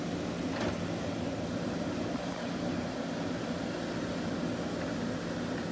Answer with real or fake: real